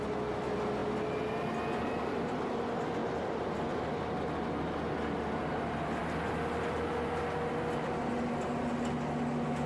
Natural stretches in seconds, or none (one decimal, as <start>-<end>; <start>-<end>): 0.0-9.7